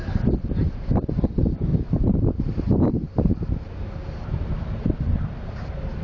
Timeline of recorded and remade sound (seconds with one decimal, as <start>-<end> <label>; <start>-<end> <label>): 0.0-6.0 recorded